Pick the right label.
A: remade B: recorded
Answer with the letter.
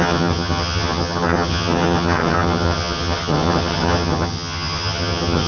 A